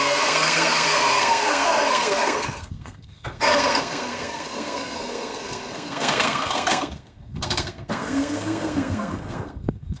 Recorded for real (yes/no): no